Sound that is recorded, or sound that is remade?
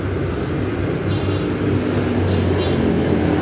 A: recorded